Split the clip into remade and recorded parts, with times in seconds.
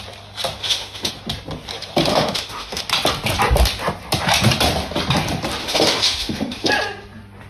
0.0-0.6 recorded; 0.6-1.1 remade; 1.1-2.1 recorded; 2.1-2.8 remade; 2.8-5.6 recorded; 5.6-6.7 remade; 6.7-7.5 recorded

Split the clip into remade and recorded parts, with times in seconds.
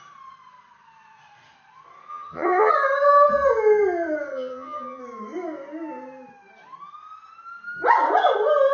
0.0-2.1 recorded; 2.1-2.7 remade; 2.7-4.3 recorded; 4.3-5.0 remade; 5.0-8.7 recorded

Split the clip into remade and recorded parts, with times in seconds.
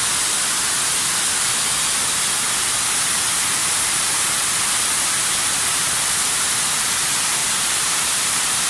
0.0-3.6 recorded; 3.6-6.9 remade; 6.9-7.4 recorded; 7.4-8.7 remade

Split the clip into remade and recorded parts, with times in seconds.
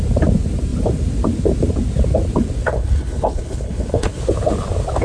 0.0-2.7 recorded; 2.7-4.2 remade; 4.2-5.0 recorded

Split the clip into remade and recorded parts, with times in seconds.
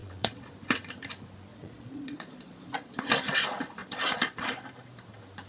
0.0-0.5 remade; 0.5-1.5 recorded; 1.5-3.0 remade; 3.0-3.8 recorded; 3.8-4.4 remade; 4.4-5.5 recorded